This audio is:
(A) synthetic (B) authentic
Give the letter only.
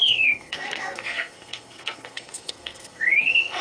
A